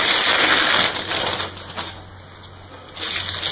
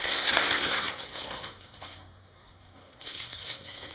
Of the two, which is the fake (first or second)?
second